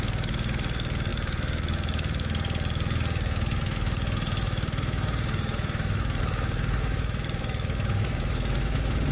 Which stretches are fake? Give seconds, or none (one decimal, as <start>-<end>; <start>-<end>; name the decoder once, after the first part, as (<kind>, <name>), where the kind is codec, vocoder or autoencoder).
0.0-9.1 (autoencoder, DAC-VAE)